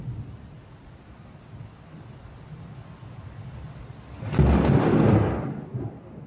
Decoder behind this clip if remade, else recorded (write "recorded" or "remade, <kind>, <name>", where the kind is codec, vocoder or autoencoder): recorded